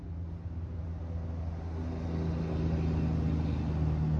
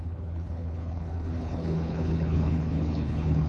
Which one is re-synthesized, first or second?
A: second